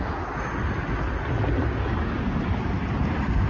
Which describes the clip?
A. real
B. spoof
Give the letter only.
A